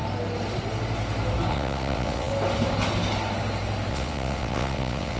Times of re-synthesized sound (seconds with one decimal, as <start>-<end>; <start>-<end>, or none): 1.5-2.3; 3.9-5.2